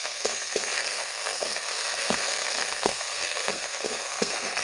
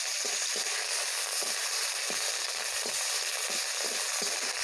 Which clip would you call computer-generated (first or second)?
first